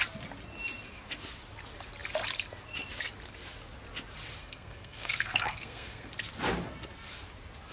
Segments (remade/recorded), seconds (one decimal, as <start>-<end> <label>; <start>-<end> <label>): 0.0-4.4 recorded; 4.4-6.1 remade; 6.1-7.7 recorded